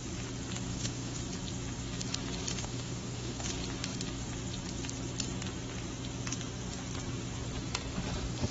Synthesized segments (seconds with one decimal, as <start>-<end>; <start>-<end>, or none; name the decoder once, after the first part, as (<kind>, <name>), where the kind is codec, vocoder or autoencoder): 0.7-1.2 (autoencoder, DAC-VAE); 2.5-3.5